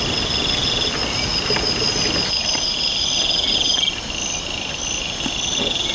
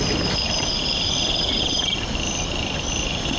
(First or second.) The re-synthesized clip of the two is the second